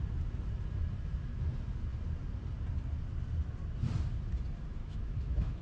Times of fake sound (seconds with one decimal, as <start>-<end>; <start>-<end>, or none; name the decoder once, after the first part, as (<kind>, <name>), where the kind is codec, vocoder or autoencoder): 4.8-5.6 (autoencoder, DAC-VAE)

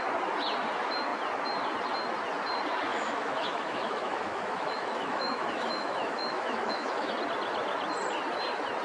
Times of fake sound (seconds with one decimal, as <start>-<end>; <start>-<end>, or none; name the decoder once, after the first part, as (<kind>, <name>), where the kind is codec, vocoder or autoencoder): 2.9-7.1 (autoencoder, DAC-VAE)